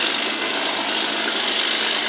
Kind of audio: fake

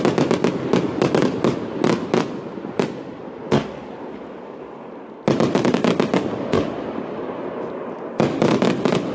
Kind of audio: real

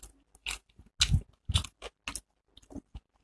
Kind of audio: real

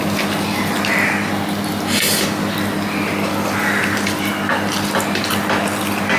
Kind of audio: real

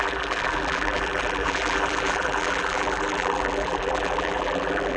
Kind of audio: fake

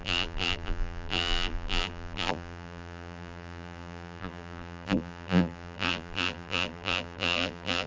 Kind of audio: fake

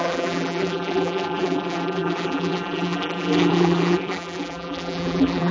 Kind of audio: fake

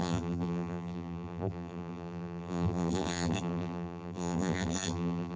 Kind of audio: fake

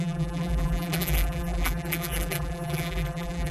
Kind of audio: fake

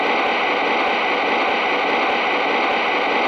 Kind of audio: real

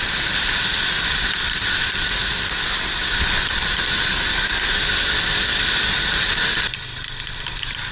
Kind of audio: fake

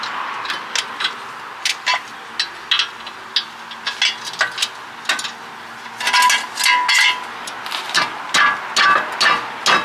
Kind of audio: real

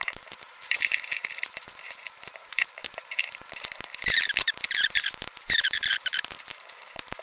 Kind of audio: fake